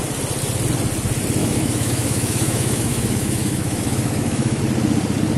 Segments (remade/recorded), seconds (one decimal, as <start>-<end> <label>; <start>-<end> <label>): 0.0-1.4 recorded; 1.4-4.6 remade; 4.6-5.4 recorded

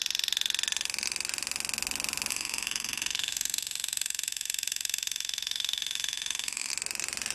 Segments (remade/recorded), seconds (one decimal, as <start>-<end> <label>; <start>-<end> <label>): 0.0-2.3 recorded; 2.3-6.7 remade; 6.7-7.3 recorded